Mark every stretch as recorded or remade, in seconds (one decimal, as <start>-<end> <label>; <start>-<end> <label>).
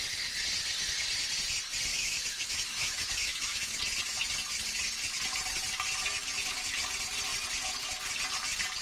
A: 0.0-1.9 recorded; 1.9-3.8 remade; 3.8-8.8 recorded